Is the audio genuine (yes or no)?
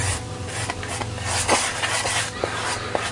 yes